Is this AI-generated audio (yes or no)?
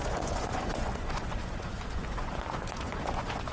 yes